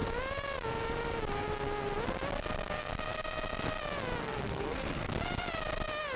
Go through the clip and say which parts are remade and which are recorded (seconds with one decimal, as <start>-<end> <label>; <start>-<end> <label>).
0.0-4.2 recorded; 4.2-5.1 remade; 5.1-6.2 recorded